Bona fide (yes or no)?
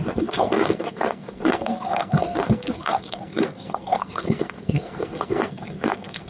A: no